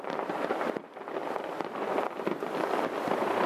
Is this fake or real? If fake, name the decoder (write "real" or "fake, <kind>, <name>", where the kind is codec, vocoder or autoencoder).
real